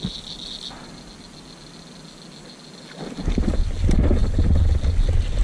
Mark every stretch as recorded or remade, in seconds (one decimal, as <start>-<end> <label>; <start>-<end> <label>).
0.0-5.4 recorded